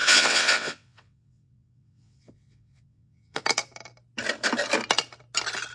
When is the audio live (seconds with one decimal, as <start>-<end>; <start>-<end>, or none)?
3.4-5.7